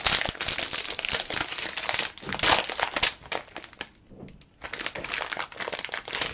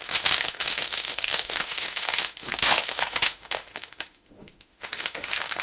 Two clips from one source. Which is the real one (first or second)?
first